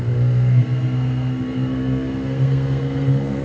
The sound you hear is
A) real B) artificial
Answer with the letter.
B